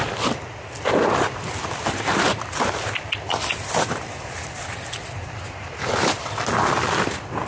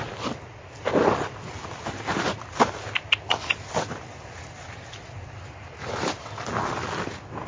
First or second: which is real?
second